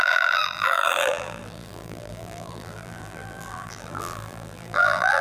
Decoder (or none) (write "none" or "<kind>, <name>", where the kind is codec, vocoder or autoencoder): vocoder, BigVGAN v2